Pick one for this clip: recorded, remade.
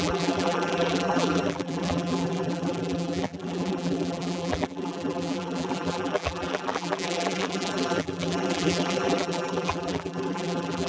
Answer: remade